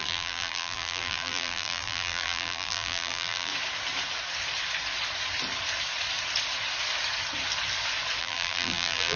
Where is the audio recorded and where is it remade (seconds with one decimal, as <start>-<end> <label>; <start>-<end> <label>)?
0.0-3.5 remade; 3.5-8.2 recorded; 8.2-9.2 remade